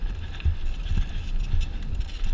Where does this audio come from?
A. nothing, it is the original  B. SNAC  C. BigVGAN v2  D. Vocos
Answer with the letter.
A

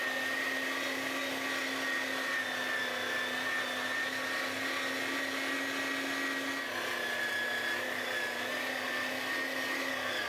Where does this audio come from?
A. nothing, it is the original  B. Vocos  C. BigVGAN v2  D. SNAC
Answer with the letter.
A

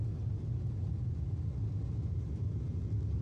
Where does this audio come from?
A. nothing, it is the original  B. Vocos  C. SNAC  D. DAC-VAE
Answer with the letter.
A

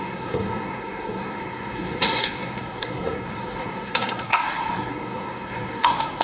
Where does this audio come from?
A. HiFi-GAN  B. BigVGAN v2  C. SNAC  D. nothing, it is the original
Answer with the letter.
C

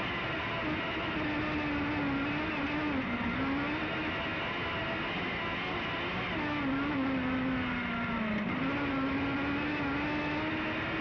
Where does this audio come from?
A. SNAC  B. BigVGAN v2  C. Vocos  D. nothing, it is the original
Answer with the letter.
D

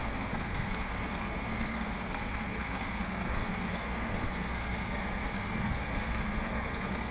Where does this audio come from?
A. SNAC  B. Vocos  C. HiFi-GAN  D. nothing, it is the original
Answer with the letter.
A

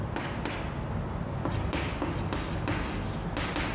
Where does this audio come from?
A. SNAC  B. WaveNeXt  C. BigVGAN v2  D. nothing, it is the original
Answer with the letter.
D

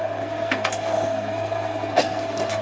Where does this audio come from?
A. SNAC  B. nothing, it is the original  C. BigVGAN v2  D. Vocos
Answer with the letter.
A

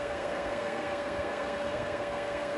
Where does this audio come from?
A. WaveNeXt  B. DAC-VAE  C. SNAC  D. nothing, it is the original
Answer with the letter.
C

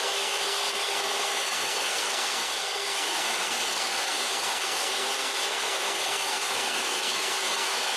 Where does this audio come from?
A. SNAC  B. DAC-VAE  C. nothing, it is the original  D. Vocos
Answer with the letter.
A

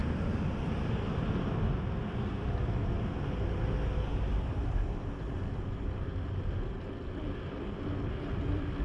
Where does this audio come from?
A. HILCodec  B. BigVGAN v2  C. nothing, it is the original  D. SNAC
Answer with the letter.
C